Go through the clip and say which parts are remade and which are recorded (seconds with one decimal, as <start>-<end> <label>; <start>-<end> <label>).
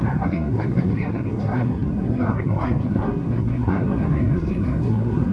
0.0-5.3 remade